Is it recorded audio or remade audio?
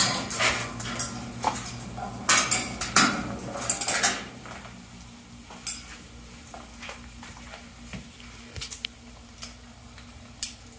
recorded